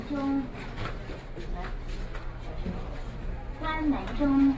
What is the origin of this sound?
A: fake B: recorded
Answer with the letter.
B